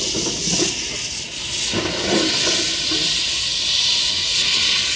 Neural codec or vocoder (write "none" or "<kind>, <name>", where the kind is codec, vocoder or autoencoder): none